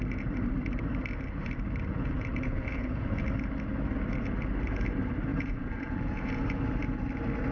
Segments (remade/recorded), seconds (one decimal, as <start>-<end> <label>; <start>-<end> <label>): 0.0-1.9 recorded; 1.9-3.2 remade; 3.2-5.3 recorded; 5.3-6.6 remade; 6.6-7.5 recorded